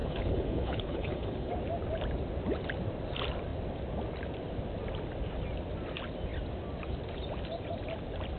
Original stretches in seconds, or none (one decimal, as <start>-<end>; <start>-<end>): 1.5-8.4